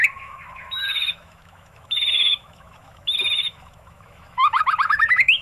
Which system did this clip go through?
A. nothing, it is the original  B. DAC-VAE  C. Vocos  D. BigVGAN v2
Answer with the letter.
B